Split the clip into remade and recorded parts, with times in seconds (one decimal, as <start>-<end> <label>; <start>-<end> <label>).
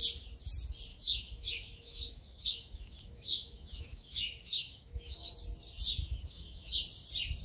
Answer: 0.0-0.9 recorded; 0.9-5.3 remade; 5.3-5.9 recorded; 5.9-6.8 remade; 6.8-7.4 recorded